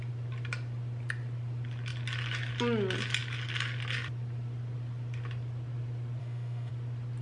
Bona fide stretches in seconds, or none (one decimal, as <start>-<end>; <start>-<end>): 0.0-6.2; 6.7-7.2